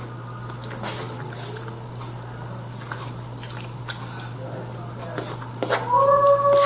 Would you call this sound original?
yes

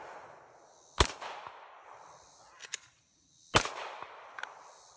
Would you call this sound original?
yes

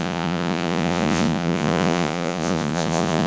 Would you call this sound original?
no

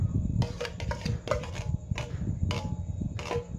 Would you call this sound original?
yes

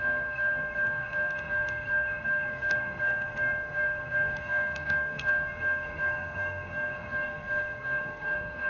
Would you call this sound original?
no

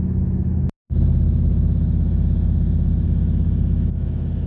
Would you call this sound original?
yes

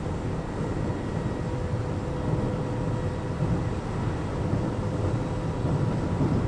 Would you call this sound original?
yes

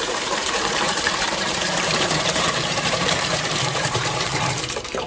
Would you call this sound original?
no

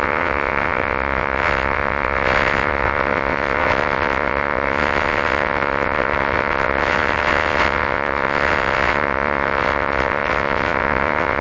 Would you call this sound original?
no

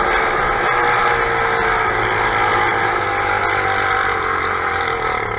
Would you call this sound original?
yes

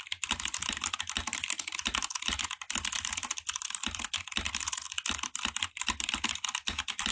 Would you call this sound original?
yes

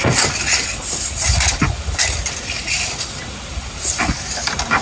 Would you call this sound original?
yes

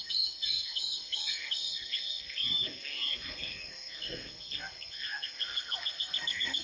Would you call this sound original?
no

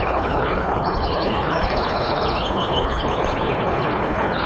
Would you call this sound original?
no